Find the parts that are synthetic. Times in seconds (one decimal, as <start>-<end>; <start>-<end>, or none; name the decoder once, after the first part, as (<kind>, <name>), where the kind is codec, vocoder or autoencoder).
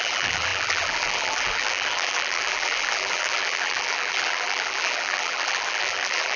0.0-6.4 (vocoder, BigVGAN v2)